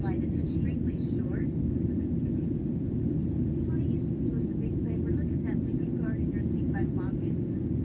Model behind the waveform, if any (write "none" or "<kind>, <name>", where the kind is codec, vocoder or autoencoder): none